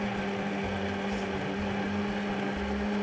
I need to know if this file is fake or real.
real